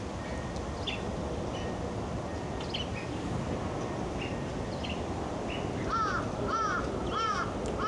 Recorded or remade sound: recorded